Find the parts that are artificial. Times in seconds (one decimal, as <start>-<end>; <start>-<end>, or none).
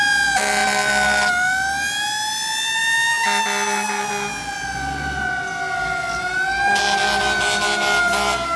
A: none